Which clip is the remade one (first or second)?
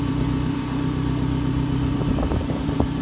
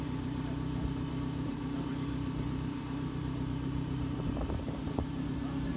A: second